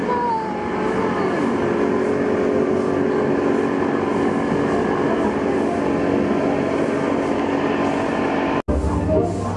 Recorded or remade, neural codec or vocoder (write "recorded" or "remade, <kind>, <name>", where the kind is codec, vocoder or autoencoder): recorded